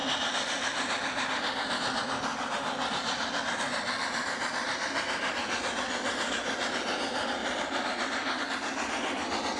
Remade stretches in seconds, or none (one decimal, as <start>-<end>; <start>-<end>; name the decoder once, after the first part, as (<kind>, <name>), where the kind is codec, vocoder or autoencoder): 0.0-1.7 (vocoder, BigVGAN v2); 2.3-3.4; 7.4-8.4